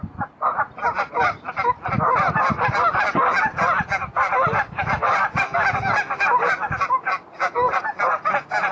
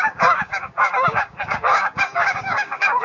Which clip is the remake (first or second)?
second